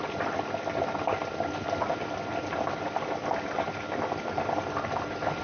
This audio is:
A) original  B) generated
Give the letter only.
B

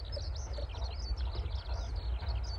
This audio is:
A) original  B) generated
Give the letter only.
A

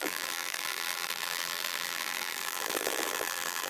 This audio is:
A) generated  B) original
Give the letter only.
A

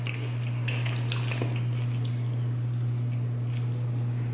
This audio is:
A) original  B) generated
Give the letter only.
A